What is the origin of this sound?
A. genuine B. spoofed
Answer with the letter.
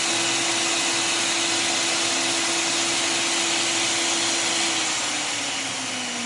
A